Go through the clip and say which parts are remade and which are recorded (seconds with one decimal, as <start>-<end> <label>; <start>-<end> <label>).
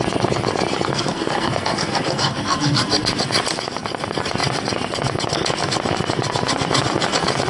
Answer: 0.0-0.7 recorded; 0.7-2.8 remade; 2.8-7.5 recorded